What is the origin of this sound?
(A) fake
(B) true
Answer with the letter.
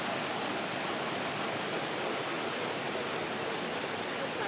B